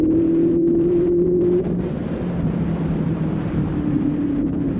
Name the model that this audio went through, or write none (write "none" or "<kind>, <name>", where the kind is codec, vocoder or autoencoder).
vocoder, BigVGAN v2